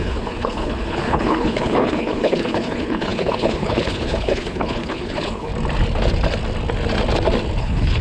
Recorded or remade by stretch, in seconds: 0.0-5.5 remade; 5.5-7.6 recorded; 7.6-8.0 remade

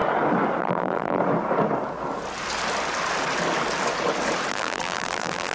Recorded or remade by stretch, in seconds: 0.0-0.6 recorded; 0.6-1.2 remade; 1.2-4.5 recorded; 4.5-5.5 remade

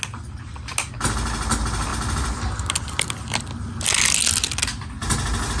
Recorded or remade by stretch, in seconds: 0.0-5.6 recorded